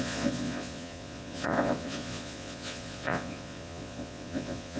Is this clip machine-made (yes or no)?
yes